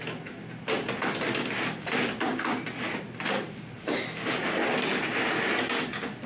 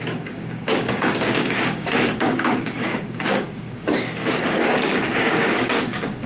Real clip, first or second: first